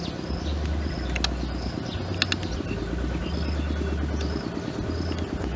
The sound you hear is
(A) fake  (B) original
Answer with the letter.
B